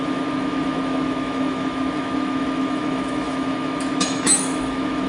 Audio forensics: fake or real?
fake